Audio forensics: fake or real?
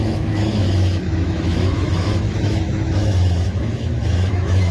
fake